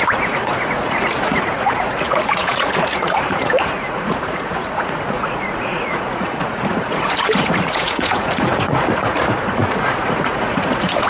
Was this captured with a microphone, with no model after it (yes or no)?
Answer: no